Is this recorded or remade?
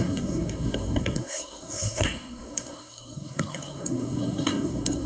remade